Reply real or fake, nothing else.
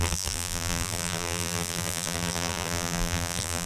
fake